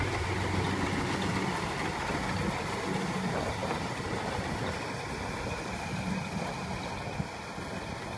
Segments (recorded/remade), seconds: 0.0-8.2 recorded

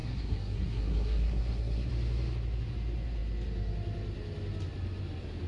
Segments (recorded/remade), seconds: 0.0-1.9 remade; 1.9-5.5 recorded

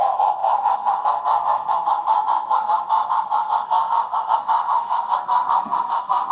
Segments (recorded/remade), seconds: 0.0-6.3 remade